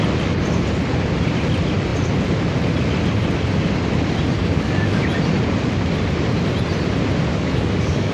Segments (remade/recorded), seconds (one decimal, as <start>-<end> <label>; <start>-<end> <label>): 0.0-4.4 recorded; 4.4-5.1 remade; 5.1-7.3 recorded; 7.3-8.1 remade